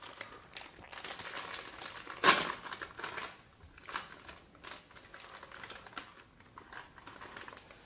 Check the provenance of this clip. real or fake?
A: real